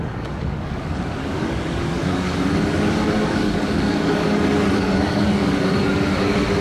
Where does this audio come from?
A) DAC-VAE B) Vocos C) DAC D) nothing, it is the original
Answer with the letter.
C